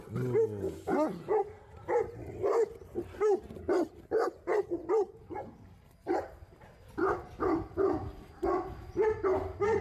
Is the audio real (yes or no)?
yes